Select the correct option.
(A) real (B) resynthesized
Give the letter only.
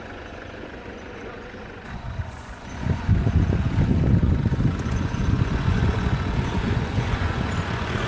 B